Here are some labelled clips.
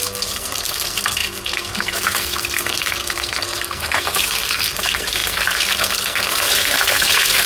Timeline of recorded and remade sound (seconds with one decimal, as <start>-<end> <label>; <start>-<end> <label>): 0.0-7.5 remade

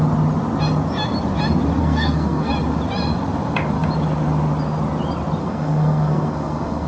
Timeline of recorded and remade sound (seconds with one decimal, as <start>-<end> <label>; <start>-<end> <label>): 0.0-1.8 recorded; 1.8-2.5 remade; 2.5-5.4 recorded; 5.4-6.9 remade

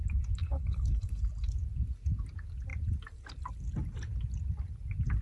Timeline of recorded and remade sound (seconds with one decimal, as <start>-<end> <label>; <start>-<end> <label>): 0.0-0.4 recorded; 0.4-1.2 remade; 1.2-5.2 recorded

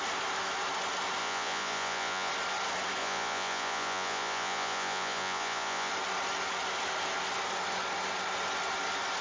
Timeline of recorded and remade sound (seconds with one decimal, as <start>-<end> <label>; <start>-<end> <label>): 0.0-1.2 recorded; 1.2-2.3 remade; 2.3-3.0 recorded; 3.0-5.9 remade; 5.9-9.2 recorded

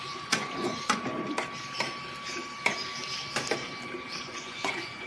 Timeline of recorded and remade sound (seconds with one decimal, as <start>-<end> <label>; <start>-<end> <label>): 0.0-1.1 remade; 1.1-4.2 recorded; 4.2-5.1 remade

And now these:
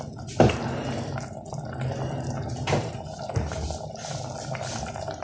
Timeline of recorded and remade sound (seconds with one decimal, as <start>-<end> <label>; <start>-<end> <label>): 0.0-2.6 recorded; 2.6-3.9 remade; 3.9-5.2 recorded

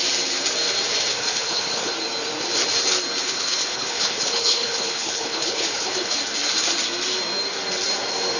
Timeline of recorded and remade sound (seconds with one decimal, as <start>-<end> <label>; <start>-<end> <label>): 0.0-1.1 recorded; 1.1-1.9 remade; 1.9-3.2 recorded; 3.2-6.2 remade; 6.2-8.4 recorded

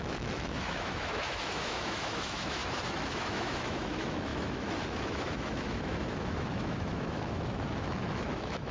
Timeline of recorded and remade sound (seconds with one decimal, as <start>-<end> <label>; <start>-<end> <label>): 0.0-8.7 remade